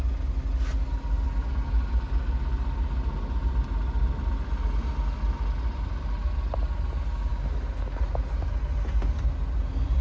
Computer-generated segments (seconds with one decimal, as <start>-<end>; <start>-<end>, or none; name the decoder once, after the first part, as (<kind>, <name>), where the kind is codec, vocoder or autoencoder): none